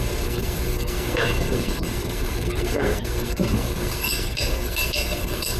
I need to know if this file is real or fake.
fake